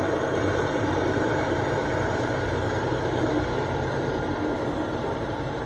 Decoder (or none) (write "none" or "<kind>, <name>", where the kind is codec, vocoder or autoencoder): vocoder, BigVGAN v2